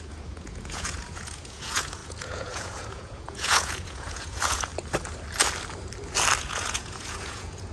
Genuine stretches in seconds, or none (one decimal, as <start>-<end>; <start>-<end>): 4.7-6.4